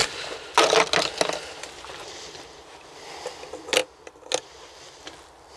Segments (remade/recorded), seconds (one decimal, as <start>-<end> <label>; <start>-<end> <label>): 0.0-5.6 recorded